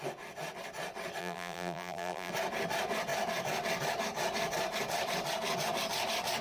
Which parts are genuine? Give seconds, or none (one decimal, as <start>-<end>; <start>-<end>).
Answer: 0.0-1.2; 2.3-6.4